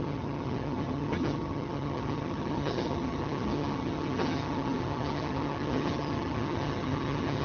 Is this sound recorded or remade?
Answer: remade